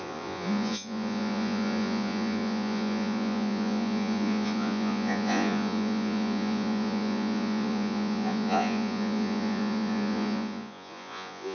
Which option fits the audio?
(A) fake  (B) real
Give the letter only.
A